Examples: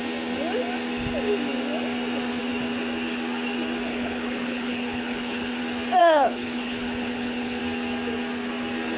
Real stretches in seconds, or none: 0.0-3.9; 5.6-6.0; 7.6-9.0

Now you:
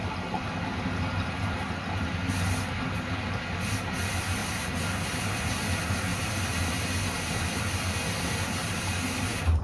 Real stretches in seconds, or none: 0.0-4.4; 5.5-6.1; 6.7-8.6

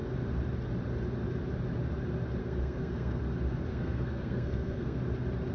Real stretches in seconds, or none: 0.0-2.4; 3.2-3.7; 5.0-5.5

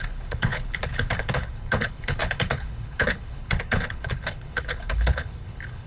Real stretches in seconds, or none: none

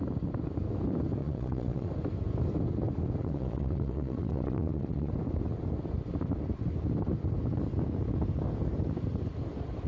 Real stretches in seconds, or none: 0.0-1.2; 1.9-3.2; 5.1-9.9

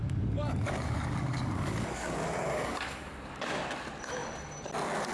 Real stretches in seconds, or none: 3.1-5.1

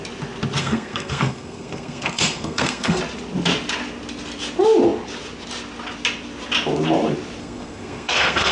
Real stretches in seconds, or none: 0.0-0.6; 3.0-7.4

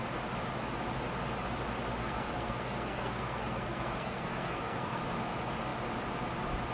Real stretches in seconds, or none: 0.0-2.0; 5.0-6.7